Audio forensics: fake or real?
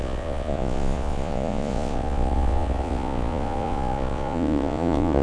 fake